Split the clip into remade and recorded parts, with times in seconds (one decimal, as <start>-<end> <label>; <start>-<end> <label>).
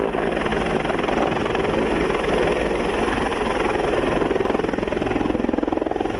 0.0-6.2 recorded